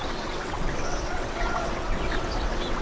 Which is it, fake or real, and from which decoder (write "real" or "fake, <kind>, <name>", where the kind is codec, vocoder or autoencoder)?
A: fake, vocoder, WaveNeXt